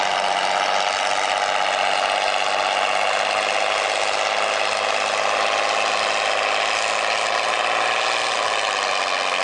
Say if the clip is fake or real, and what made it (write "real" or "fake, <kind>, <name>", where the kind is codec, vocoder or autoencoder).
real